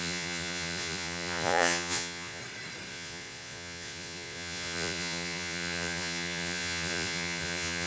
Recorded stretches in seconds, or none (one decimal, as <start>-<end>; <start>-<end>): 2.4-2.9